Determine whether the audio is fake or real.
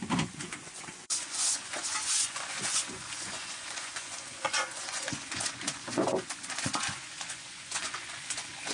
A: fake